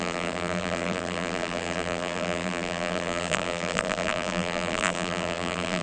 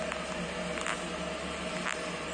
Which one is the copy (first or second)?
first